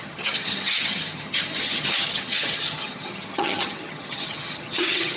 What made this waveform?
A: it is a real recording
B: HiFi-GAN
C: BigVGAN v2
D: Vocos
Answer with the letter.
B